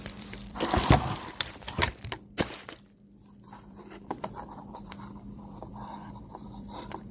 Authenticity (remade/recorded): remade